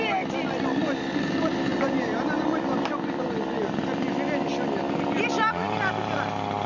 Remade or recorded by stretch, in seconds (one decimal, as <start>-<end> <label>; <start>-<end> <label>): 0.0-0.8 recorded; 0.8-3.8 remade; 3.8-6.7 recorded